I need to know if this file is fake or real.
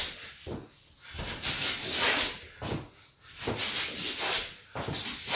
real